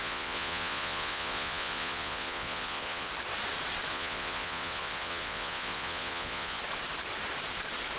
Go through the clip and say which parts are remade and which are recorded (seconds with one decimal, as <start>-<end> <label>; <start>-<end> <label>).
0.0-3.1 remade; 3.1-3.9 recorded; 3.9-6.6 remade; 6.6-8.0 recorded